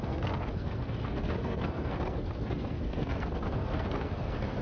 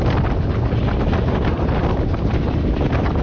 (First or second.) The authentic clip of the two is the second